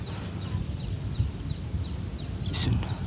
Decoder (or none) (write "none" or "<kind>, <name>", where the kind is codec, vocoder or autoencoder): none